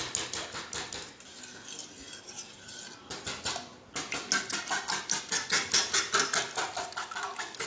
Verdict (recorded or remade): recorded